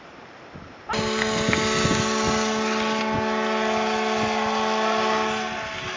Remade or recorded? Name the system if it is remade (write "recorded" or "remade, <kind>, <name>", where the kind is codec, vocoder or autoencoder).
recorded